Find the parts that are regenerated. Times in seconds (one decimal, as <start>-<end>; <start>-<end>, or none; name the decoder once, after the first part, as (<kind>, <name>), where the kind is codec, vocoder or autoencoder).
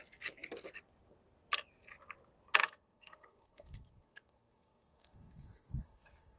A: 2.6-6.4 (codec, SNAC)